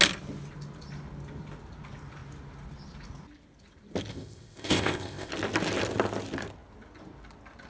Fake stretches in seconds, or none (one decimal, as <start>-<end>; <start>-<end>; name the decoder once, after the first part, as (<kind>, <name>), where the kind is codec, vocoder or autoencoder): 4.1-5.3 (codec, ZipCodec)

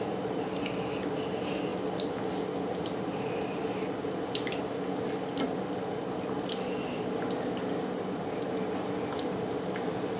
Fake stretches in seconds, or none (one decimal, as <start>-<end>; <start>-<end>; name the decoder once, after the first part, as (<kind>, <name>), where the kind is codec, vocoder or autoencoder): none

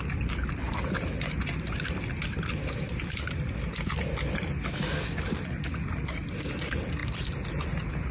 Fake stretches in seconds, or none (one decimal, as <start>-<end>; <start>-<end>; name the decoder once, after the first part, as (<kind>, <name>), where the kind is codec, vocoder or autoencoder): none